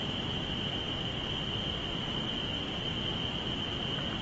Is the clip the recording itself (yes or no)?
yes